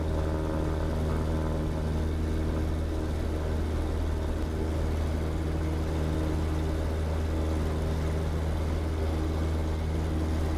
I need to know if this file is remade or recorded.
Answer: recorded